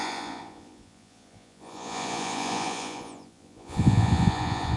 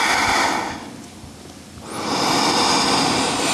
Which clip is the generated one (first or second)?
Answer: first